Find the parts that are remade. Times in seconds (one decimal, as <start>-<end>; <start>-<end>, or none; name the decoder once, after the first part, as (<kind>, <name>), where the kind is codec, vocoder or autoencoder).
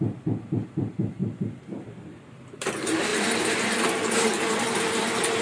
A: 0.0-1.2 (vocoder, BigVGAN v2); 1.9-5.4